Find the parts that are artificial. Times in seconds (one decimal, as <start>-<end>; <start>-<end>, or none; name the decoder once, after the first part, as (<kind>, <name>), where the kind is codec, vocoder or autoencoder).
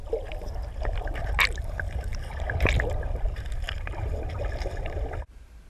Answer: 2.1-4.3 (vocoder, BigVGAN v2)